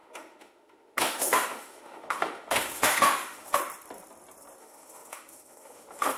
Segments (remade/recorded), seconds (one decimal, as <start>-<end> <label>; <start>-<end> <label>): 0.0-3.6 remade; 3.6-4.6 recorded; 4.6-6.2 remade